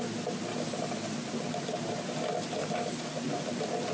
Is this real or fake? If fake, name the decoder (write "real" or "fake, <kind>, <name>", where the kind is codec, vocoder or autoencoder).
real